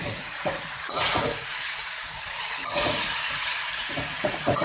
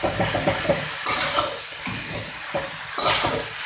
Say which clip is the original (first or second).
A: second